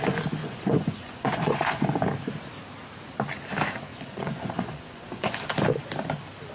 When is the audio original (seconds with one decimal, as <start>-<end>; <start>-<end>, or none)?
0.0-0.4; 2.0-3.9; 5.4-6.5